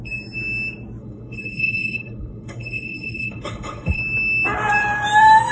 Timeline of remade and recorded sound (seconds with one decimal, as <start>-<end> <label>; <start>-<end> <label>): 0.0-1.0 recorded; 1.0-4.0 remade; 4.0-5.5 recorded